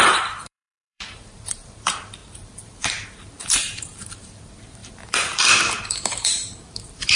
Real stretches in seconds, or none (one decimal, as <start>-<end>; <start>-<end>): none